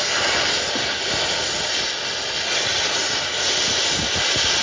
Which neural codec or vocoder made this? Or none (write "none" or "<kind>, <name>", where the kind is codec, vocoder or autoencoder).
none